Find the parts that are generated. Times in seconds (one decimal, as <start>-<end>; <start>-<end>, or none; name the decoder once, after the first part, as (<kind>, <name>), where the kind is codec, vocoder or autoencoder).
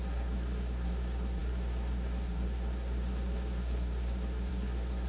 0.0-5.1 (codec, SNAC)